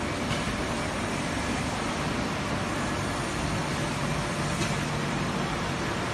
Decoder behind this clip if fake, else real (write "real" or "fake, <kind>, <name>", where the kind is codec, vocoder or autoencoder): real